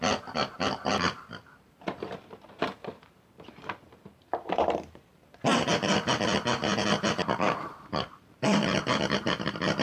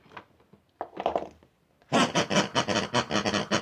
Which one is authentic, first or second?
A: second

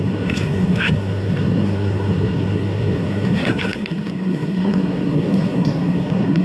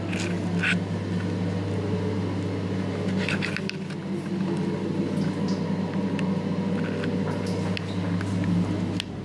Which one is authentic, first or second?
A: second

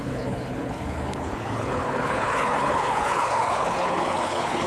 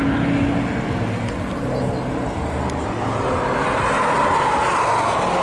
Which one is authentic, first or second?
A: second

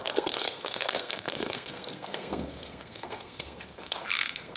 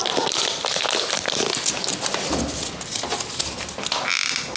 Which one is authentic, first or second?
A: second